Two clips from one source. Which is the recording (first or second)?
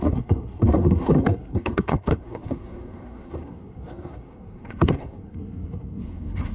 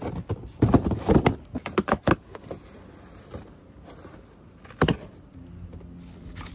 second